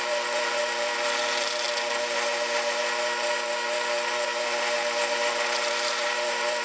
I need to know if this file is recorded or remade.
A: remade